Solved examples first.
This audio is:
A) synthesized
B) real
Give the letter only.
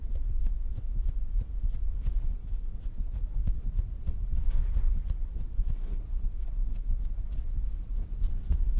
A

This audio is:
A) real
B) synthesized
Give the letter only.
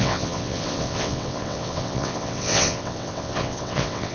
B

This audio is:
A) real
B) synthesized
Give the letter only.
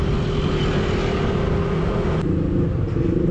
A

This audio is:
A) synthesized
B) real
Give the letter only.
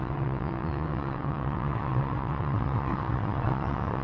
A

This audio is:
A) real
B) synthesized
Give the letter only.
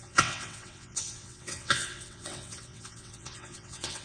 B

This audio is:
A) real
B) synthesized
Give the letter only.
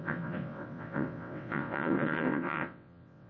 B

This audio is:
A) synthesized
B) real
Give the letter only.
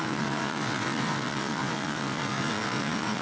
A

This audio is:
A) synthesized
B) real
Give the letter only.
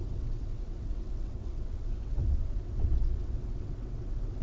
A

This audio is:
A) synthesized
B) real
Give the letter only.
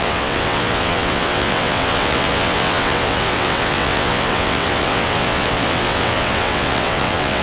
A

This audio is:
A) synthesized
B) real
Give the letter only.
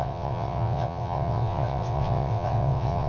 A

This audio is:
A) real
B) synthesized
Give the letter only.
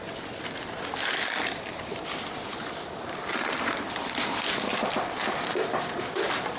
A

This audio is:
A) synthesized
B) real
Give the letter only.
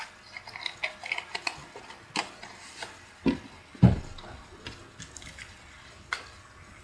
B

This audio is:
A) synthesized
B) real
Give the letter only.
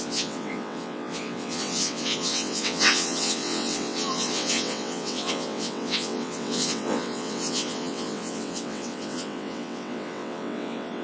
A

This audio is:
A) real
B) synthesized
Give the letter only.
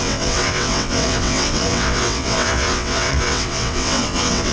B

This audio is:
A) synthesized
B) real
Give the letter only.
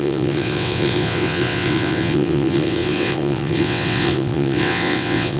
A